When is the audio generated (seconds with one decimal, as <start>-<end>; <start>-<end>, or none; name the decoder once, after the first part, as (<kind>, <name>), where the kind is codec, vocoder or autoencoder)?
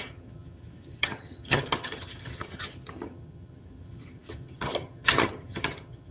0.0-6.1 (vocoder, HiFi-GAN)